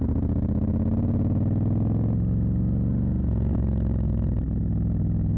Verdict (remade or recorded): recorded